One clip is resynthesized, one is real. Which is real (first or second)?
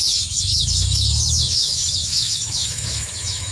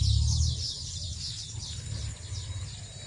second